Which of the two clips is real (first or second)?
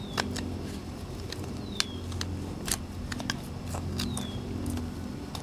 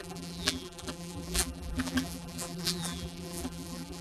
first